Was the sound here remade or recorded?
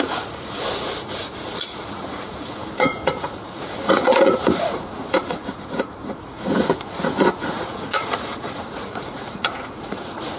remade